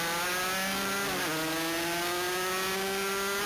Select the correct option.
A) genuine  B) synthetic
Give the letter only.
A